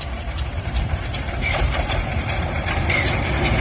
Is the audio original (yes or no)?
no